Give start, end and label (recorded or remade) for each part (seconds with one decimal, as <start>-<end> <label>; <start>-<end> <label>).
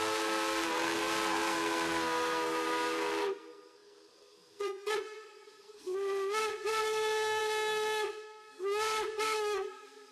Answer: 0.0-10.1 remade